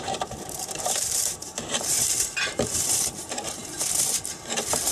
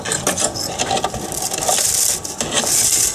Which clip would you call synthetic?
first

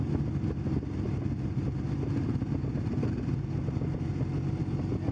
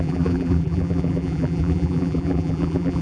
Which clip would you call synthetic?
second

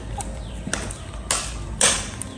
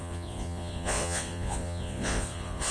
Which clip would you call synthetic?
second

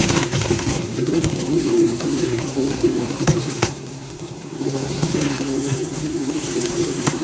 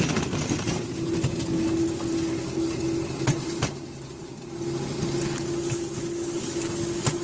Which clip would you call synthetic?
first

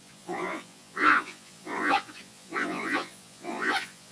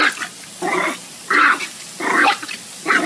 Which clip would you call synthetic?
first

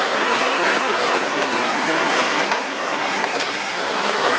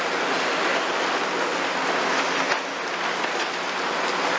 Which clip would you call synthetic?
first